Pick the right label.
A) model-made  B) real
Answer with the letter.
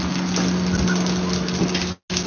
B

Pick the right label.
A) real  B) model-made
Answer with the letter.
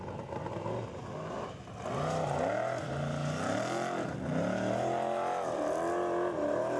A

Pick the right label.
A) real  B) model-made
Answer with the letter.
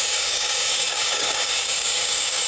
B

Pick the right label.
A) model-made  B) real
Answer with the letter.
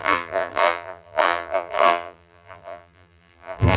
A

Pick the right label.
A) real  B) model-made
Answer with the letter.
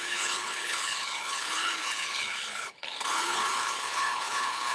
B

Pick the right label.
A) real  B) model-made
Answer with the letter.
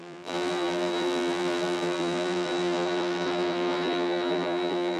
B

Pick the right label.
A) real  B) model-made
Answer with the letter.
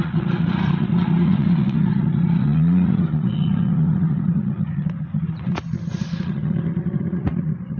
B